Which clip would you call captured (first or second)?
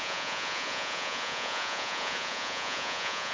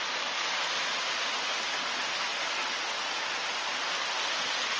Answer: second